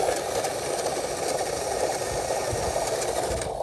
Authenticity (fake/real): real